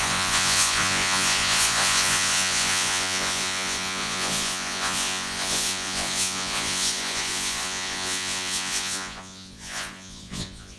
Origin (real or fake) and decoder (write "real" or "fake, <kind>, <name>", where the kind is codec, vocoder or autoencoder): fake, vocoder, Vocos